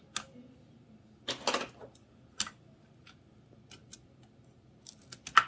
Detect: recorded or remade recorded